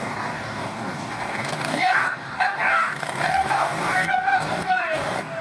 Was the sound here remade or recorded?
remade